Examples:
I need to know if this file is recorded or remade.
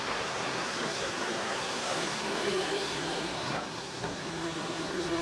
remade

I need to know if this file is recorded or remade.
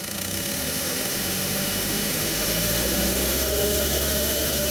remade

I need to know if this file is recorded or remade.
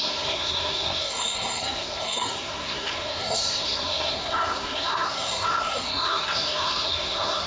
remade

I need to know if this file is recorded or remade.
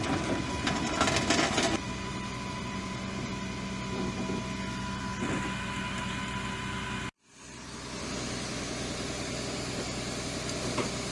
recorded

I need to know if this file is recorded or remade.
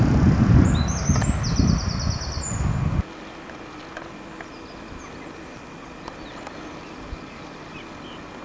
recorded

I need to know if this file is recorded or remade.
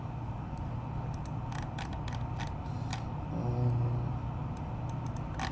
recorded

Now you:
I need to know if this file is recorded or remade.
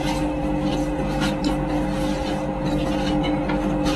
recorded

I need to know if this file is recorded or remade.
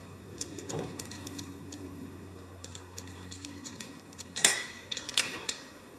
remade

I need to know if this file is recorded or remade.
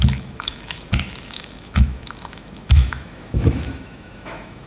remade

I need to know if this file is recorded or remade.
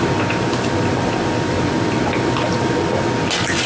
recorded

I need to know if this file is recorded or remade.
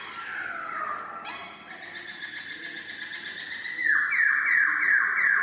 recorded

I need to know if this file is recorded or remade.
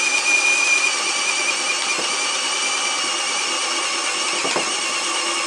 recorded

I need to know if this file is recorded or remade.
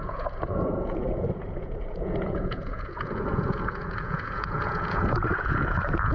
remade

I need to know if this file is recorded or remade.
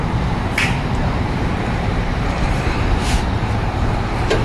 remade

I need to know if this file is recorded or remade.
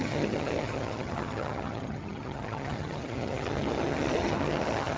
remade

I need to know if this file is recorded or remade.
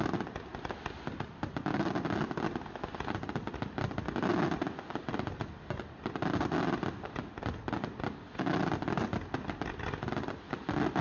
recorded